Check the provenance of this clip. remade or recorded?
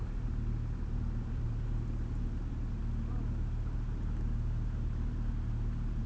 recorded